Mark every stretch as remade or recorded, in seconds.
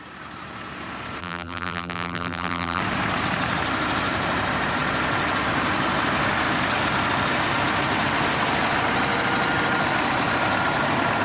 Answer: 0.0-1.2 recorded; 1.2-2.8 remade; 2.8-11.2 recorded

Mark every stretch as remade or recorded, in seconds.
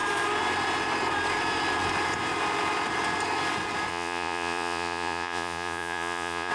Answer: 0.0-3.9 recorded; 3.9-6.5 remade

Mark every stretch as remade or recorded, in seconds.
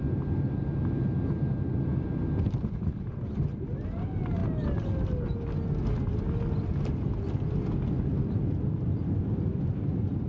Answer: 0.0-10.3 recorded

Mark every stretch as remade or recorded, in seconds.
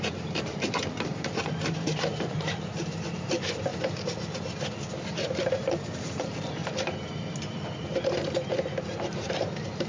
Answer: 0.0-3.7 remade; 3.7-5.6 recorded; 5.6-6.6 remade; 6.6-7.1 recorded; 7.1-9.9 remade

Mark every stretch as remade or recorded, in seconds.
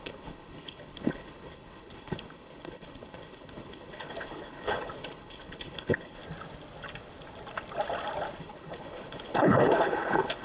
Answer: 0.0-6.2 remade; 6.2-8.4 recorded; 8.4-10.4 remade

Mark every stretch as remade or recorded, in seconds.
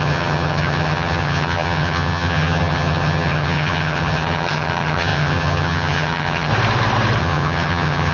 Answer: 0.0-6.5 remade; 6.5-7.2 recorded; 7.2-8.1 remade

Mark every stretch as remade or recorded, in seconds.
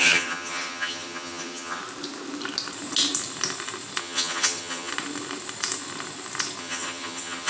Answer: 0.0-1.8 remade; 1.8-4.0 recorded; 4.0-4.9 remade; 4.9-6.6 recorded; 6.6-7.5 remade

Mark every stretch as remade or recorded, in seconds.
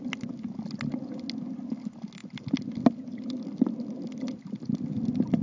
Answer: 0.0-5.4 recorded